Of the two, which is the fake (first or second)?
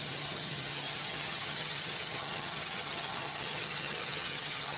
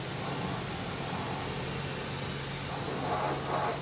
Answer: first